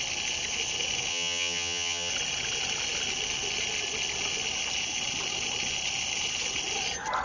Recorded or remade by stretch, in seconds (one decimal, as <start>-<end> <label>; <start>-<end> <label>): 0.0-1.1 recorded; 1.1-2.1 remade; 2.1-7.2 recorded